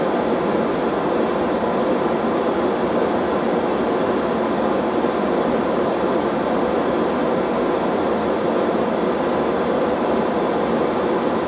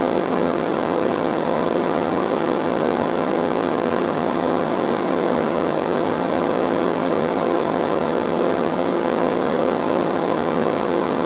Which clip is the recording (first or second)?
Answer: first